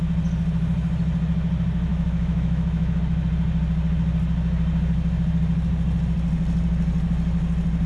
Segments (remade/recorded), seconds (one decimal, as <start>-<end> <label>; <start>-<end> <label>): 0.0-1.9 recorded; 1.9-3.0 remade; 3.0-7.9 recorded